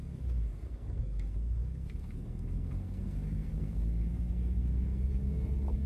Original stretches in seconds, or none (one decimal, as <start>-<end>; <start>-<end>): none